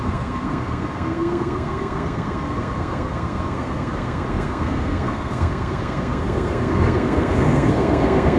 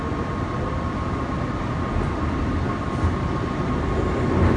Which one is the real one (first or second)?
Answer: second